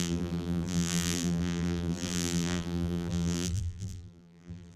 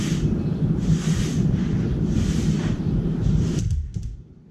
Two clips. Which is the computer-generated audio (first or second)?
first